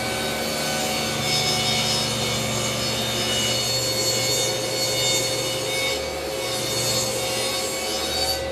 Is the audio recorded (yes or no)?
yes